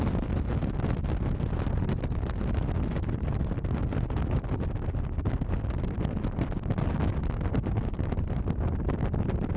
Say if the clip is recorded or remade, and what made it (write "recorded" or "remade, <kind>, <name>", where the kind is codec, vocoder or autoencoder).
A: recorded